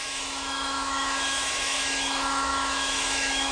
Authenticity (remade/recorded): remade